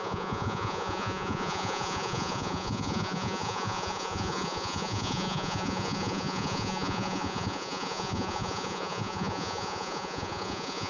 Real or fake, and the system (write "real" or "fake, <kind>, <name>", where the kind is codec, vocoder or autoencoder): fake, vocoder, Vocos